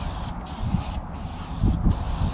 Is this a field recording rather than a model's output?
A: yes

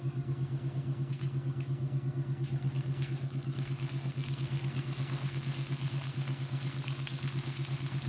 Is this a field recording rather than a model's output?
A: no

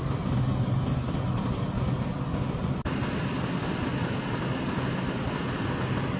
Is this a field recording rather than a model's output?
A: yes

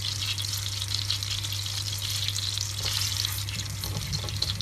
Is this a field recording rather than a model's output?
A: yes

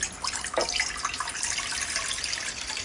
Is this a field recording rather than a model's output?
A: yes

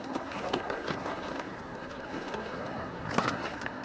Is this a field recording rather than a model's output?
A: no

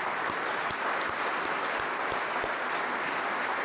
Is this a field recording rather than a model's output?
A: yes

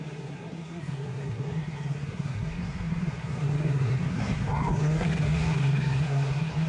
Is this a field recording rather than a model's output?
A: no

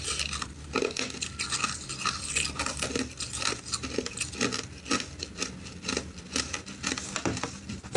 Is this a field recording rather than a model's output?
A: yes